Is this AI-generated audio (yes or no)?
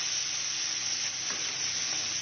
no